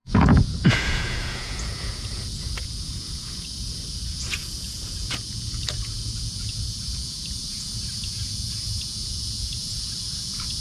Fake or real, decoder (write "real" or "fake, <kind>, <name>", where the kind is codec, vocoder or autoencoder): fake, vocoder, Vocos